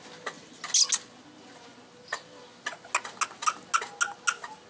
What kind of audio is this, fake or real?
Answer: real